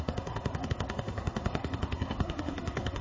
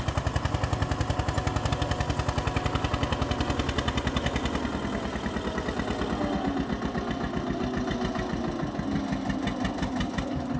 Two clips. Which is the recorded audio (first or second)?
second